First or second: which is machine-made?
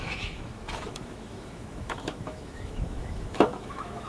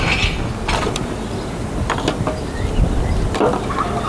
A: first